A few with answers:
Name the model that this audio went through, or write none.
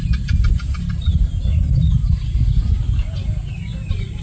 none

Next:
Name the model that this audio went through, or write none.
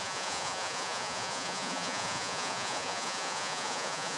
vocoder, Vocos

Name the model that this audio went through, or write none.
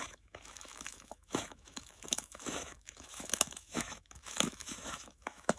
autoencoder, DAC-VAE